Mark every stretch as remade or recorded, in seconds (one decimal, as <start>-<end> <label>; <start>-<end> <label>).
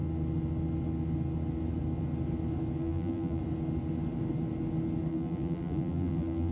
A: 0.0-2.8 recorded; 2.8-3.4 remade; 3.4-5.1 recorded; 5.1-6.5 remade